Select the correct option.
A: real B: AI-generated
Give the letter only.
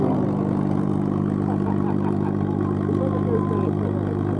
A